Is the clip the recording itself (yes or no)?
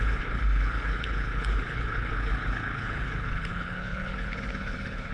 no